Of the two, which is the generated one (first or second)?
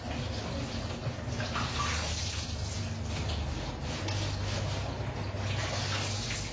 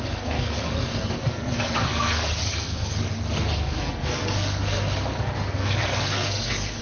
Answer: second